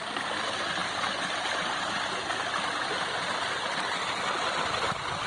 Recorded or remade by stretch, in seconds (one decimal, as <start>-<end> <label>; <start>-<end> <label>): 0.0-5.3 recorded